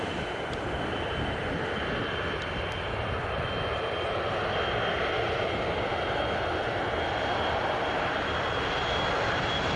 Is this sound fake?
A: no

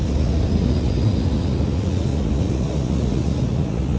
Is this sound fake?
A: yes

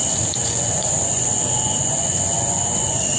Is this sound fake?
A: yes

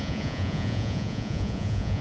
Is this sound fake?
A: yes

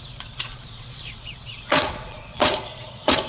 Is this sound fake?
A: yes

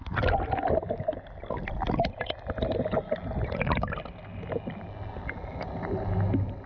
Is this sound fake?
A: no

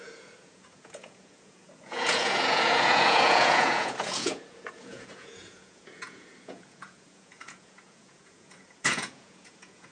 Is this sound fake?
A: yes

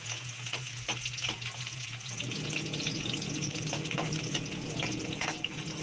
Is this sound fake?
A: yes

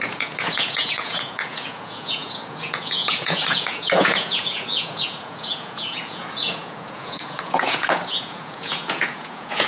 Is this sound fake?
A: yes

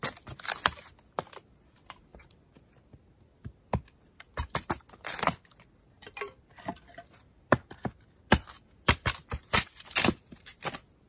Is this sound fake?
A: no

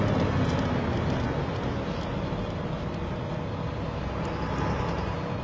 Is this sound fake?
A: no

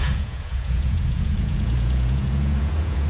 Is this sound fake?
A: yes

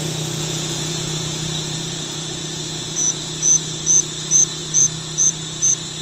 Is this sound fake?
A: yes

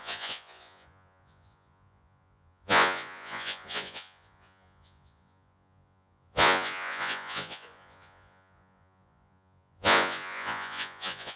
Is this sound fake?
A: yes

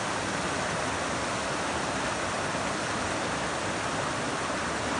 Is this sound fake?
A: no